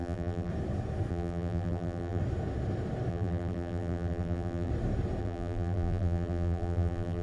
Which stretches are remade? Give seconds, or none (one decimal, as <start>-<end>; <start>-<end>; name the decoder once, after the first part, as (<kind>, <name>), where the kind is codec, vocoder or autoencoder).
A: 0.0-0.5 (vocoder, BigVGAN v2); 1.1-2.2; 3.1-4.7; 5.2-7.2